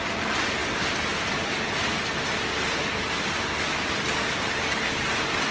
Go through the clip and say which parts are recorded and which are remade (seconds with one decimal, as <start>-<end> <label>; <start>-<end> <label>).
0.0-5.5 recorded